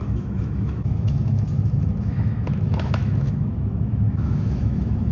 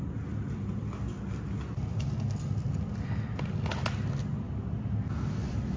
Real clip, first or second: second